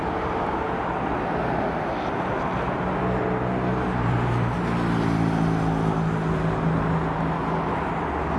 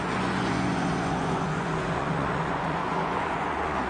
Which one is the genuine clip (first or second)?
first